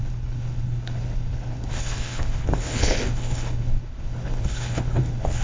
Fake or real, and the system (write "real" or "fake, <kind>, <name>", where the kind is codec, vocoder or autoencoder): fake, codec, HILCodec